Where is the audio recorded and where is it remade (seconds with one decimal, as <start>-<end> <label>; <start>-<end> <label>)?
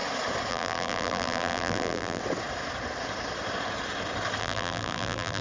0.0-0.5 recorded; 0.5-2.2 remade; 2.2-4.4 recorded; 4.4-5.4 remade